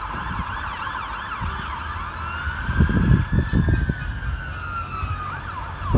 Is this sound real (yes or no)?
yes